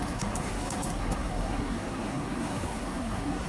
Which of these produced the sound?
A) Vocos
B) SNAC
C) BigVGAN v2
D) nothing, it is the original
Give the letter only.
B